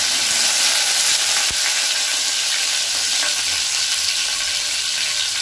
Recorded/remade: recorded